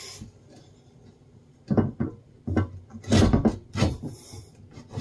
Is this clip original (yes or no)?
yes